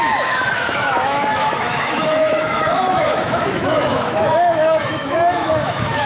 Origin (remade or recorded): remade